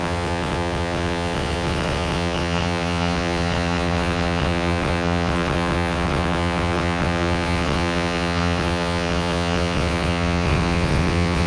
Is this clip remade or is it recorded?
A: remade